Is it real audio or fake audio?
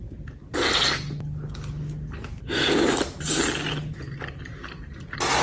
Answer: real